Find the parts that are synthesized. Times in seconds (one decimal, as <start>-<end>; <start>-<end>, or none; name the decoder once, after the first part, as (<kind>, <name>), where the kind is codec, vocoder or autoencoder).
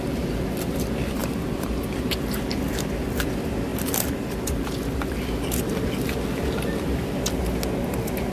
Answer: 3.7-7.4 (vocoder, BigVGAN v2)